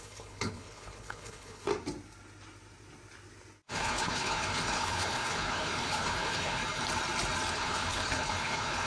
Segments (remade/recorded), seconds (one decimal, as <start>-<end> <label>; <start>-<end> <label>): 0.0-1.7 remade; 1.7-3.7 recorded; 3.7-6.6 remade; 6.6-7.5 recorded; 7.5-8.9 remade